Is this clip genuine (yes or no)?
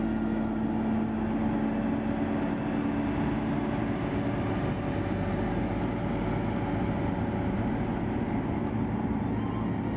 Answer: yes